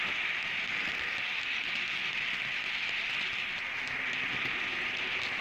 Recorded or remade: recorded